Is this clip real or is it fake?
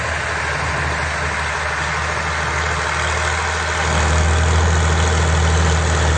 real